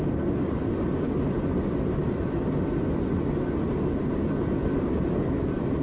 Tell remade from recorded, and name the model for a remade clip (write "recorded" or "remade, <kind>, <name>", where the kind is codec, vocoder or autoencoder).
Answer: recorded